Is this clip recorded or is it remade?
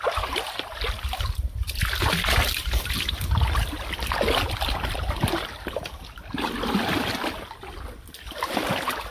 recorded